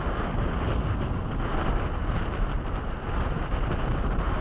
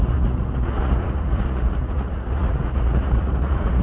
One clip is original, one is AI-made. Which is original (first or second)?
first